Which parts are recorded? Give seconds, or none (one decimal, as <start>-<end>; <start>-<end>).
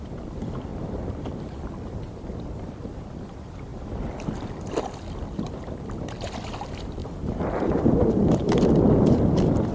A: 0.0-0.7; 1.4-7.0; 8.5-9.7